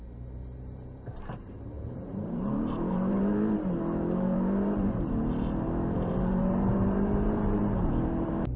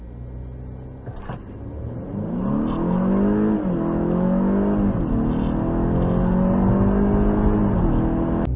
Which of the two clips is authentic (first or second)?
second